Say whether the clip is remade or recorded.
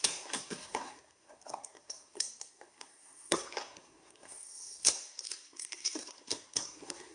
remade